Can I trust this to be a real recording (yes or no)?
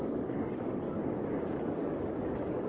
no